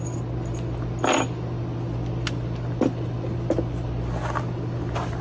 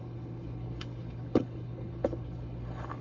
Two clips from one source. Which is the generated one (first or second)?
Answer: second